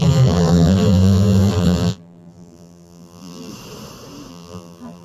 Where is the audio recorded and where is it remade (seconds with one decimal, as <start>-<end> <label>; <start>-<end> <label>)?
0.0-3.5 remade; 3.5-4.3 recorded; 4.3-5.0 remade